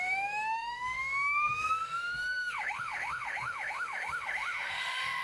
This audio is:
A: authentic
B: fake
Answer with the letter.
B